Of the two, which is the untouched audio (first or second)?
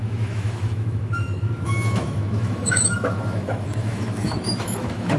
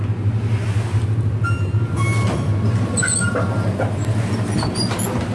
second